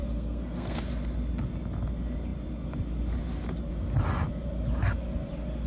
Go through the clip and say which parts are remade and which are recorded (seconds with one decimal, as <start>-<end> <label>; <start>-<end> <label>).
0.0-0.8 remade; 0.8-5.7 recorded